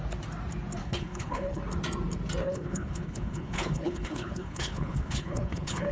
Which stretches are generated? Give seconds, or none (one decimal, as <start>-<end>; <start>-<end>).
0.8-1.6; 2.4-5.9